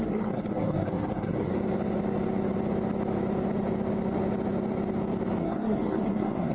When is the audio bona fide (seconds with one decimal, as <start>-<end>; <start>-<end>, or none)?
1.5-5.4